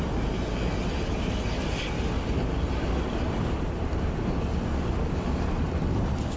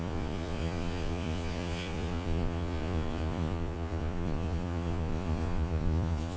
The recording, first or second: first